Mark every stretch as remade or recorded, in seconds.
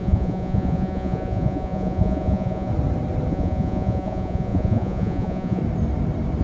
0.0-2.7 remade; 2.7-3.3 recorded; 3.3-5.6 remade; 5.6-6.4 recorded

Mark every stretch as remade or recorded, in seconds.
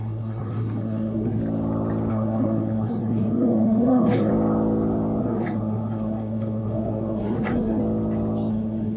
0.0-1.4 remade; 1.4-2.1 recorded; 2.1-4.3 remade; 4.3-5.2 recorded; 5.2-7.8 remade; 7.8-8.5 recorded; 8.5-9.0 remade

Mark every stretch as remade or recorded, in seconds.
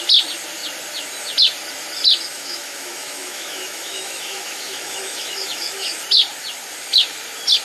0.0-2.3 recorded; 2.3-5.9 remade; 5.9-7.6 recorded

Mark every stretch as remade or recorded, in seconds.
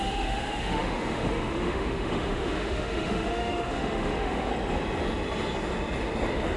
0.0-4.5 remade; 4.5-6.6 recorded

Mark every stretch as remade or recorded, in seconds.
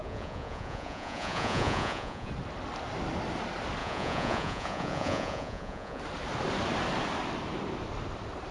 0.0-2.3 remade; 2.3-3.8 recorded; 3.8-6.0 remade; 6.0-8.5 recorded